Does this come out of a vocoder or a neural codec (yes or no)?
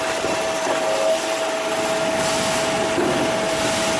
no